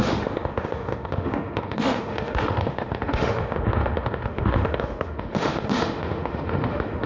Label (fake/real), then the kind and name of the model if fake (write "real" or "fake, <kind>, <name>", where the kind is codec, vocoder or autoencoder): fake, autoencoder, DAC-VAE